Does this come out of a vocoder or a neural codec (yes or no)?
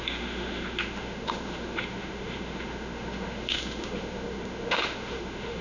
yes